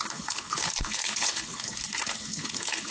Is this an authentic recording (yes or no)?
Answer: no